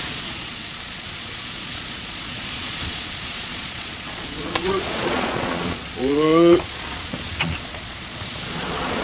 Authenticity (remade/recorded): remade